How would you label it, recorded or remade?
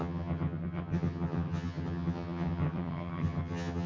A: remade